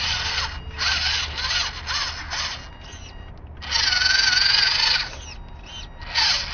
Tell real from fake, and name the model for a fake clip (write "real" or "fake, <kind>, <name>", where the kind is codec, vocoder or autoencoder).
real